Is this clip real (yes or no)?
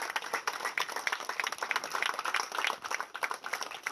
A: yes